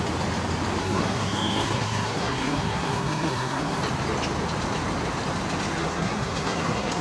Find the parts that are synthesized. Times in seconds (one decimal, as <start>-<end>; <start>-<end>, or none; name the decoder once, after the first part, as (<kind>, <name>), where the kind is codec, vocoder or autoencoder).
0.8-3.8 (codec, SNAC); 5.8-7.0